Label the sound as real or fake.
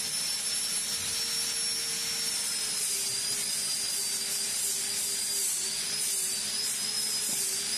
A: real